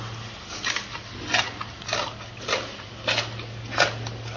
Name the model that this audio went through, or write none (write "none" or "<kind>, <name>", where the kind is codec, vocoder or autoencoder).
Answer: none